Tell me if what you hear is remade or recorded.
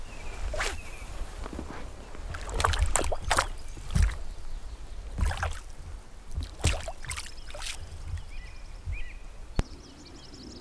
recorded